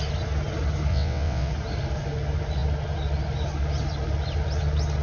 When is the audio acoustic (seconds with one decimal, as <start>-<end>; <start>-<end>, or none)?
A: 0.0-0.9; 1.5-5.0